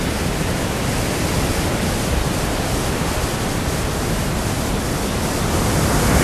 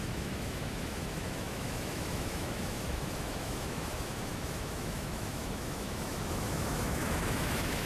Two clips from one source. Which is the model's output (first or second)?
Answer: second